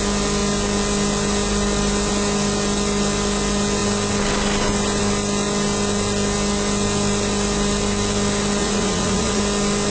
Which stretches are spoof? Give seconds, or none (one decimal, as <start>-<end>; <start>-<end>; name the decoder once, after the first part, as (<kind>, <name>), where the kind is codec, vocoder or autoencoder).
8.6-9.4 (vocoder, Vocos)